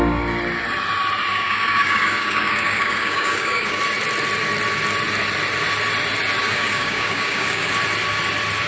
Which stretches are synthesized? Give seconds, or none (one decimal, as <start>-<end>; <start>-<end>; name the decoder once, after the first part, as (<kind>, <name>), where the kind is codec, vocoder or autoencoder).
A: 1.3-3.8 (codec, DAC); 6.4-7.8